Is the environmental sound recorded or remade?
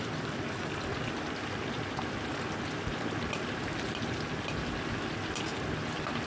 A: recorded